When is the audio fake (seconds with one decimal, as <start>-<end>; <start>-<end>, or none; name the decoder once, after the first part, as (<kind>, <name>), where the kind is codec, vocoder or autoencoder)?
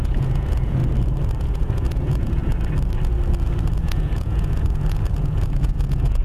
0.0-0.8 (vocoder, Vocos); 1.4-2.4; 3.8-6.2